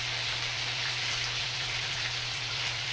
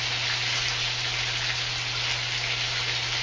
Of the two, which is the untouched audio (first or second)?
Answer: second